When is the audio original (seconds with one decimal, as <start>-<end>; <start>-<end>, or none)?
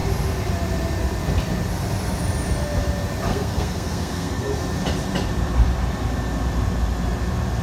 0.0-3.3; 4.5-7.6